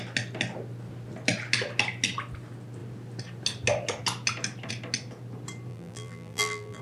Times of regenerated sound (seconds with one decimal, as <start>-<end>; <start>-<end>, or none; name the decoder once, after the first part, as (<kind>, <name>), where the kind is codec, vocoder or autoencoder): 5.7-6.8 (vocoder, BigVGAN v2)